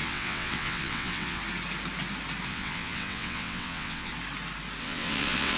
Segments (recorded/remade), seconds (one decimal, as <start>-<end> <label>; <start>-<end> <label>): 0.0-1.4 remade; 1.4-2.5 recorded; 2.5-4.1 remade; 4.1-4.8 recorded; 4.8-5.6 remade